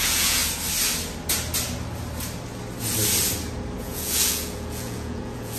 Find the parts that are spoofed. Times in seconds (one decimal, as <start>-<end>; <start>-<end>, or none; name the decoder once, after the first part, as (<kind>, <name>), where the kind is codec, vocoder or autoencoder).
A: 0.0-0.4 (vocoder, Vocos); 3.8-5.6